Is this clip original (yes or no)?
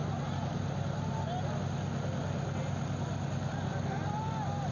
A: yes